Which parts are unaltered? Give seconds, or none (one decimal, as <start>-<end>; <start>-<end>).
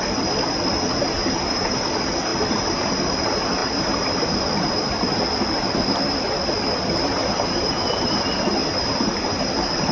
0.0-3.6; 4.3-7.2; 8.2-8.6; 9.2-9.9